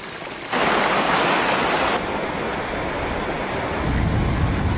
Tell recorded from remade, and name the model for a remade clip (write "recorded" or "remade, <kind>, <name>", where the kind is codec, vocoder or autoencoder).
recorded